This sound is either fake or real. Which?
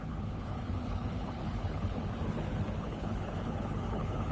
fake